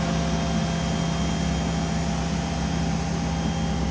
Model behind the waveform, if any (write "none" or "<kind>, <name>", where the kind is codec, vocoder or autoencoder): none